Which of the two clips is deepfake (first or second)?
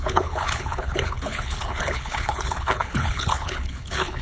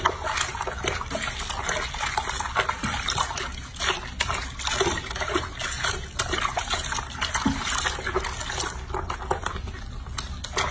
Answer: first